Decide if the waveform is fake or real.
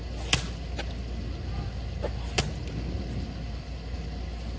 real